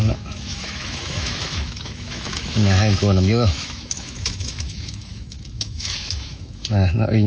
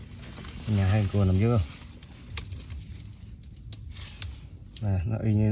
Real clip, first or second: second